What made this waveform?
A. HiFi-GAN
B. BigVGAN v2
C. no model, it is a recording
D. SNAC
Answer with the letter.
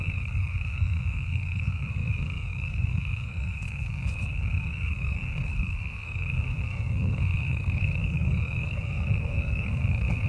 D